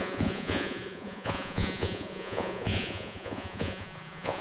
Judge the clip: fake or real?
fake